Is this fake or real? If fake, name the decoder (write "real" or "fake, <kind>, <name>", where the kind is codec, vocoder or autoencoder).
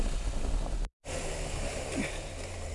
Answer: real